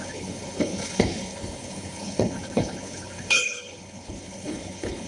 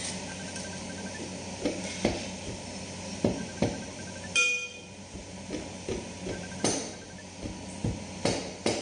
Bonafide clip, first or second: second